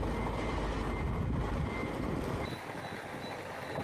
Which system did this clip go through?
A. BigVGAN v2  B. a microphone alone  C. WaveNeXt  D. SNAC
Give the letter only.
B